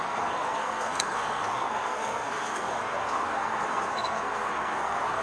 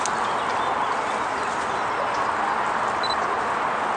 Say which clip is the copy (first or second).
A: first